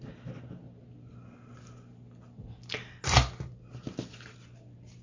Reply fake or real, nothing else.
real